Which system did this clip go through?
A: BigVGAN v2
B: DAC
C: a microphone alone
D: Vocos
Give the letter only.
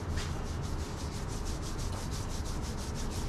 C